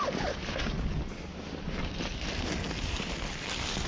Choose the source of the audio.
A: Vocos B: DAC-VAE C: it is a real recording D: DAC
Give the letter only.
C